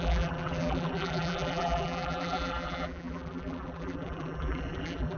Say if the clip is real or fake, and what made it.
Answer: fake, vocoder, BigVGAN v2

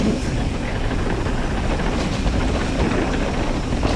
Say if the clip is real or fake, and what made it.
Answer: real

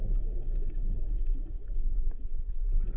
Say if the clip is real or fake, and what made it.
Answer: real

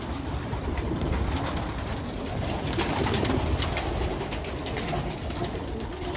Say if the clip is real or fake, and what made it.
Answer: fake, vocoder, BigVGAN v2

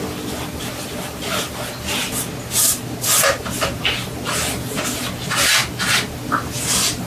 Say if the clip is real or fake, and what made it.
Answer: real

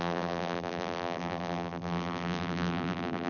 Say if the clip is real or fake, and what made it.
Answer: fake, vocoder, BigVGAN v2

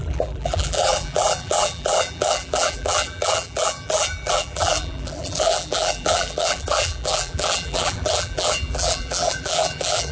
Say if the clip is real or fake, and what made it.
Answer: fake, vocoder, BigVGAN v2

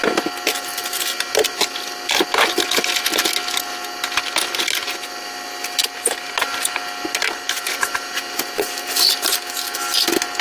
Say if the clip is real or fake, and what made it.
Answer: real